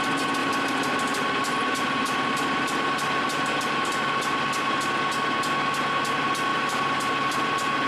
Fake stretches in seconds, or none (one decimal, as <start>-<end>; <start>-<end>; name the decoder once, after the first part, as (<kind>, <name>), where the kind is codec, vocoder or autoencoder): 0.4-4.8 (vocoder, BigVGAN v2); 6.5-7.5